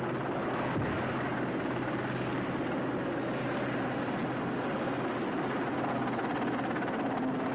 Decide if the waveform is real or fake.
real